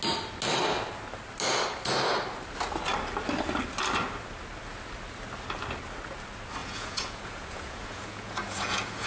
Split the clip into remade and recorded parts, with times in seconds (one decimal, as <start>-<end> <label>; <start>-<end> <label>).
0.0-6.6 recorded; 6.6-9.1 remade

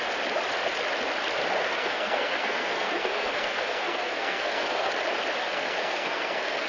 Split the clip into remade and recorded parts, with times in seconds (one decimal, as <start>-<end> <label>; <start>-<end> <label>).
0.0-1.6 recorded; 1.6-4.9 remade; 4.9-5.4 recorded; 5.4-6.7 remade

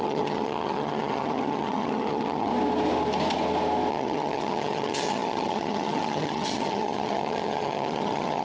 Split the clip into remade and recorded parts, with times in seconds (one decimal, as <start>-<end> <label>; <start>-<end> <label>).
0.0-2.5 remade; 2.5-3.9 recorded; 3.9-8.4 remade

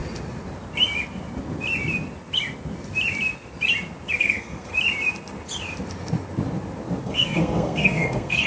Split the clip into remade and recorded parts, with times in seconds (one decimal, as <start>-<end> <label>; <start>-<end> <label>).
0.0-4.2 recorded; 4.2-4.7 remade; 4.7-7.0 recorded; 7.0-8.5 remade

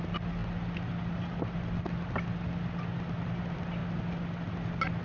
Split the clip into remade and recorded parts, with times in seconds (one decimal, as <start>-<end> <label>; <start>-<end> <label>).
0.0-5.0 recorded

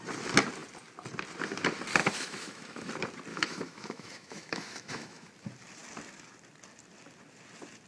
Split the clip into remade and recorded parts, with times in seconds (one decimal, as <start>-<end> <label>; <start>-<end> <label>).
0.0-2.0 recorded; 2.0-2.9 remade; 2.9-3.3 recorded; 3.3-5.3 remade; 5.3-7.9 recorded

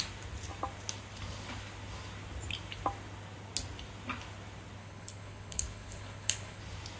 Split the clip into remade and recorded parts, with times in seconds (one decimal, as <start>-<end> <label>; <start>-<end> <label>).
0.0-4.8 recorded; 4.8-6.6 remade; 6.6-7.0 recorded

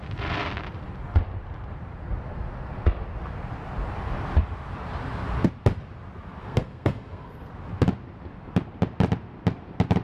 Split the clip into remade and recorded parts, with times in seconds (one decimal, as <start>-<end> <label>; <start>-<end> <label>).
0.0-6.4 recorded; 6.4-7.5 remade; 7.5-10.0 recorded